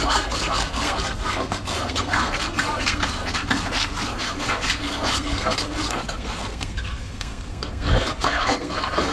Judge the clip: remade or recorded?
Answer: remade